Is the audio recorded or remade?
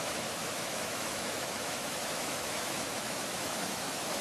remade